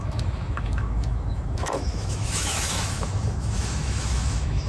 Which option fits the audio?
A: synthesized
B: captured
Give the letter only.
A